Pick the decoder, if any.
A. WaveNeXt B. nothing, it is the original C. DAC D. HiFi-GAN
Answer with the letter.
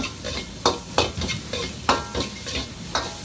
B